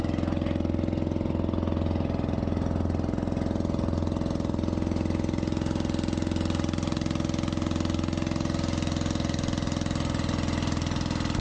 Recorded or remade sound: recorded